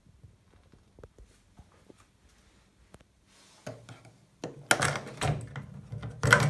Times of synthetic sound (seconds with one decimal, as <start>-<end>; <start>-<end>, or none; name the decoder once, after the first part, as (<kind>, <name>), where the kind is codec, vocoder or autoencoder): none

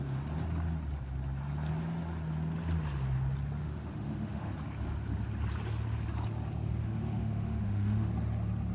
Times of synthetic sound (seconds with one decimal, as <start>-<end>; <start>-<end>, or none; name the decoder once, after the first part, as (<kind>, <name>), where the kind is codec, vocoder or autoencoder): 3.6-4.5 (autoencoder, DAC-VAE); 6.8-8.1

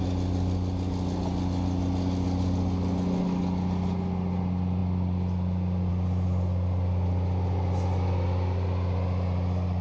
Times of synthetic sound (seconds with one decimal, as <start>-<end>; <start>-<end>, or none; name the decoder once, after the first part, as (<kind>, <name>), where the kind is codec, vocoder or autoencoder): none

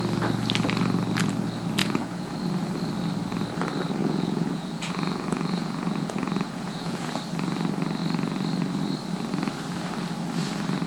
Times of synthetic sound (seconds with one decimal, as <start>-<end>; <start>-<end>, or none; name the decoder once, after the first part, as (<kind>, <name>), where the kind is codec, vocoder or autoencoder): 1.8-2.4 (vocoder, Vocos); 4.0-7.1